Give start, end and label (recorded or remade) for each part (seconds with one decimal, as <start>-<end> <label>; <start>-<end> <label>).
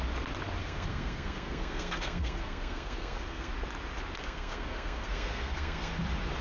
0.0-0.6 recorded; 0.6-3.5 remade; 3.5-4.2 recorded; 4.2-5.9 remade; 5.9-6.4 recorded